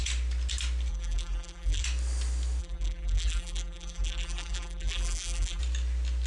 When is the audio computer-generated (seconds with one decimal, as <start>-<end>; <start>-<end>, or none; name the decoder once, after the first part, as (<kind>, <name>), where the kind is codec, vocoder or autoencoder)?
0.9-1.8 (vocoder, BigVGAN v2); 2.6-5.6